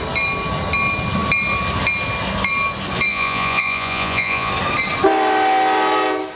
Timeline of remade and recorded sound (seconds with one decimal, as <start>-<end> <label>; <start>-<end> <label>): 0.0-3.1 recorded; 3.1-4.5 remade; 4.5-6.4 recorded